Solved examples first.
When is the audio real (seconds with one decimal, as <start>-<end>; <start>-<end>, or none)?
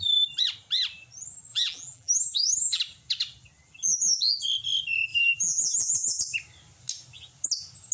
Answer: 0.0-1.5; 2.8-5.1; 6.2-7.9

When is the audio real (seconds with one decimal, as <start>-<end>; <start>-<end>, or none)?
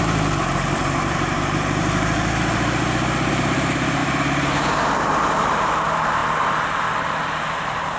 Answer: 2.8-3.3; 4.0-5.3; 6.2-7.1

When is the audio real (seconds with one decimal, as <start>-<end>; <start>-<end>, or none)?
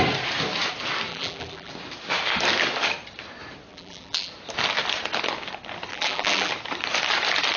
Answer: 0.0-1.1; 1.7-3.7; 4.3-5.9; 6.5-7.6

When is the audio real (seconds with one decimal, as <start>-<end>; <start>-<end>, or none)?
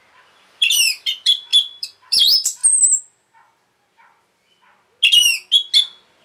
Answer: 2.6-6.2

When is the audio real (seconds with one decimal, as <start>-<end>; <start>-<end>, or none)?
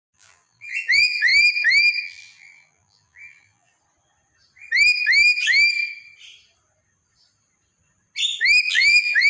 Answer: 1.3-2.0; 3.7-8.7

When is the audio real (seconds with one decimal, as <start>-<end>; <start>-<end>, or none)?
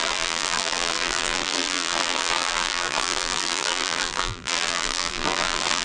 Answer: none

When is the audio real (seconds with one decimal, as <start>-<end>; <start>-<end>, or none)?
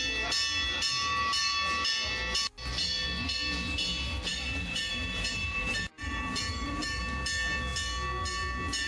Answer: 0.0-4.3; 7.0-8.9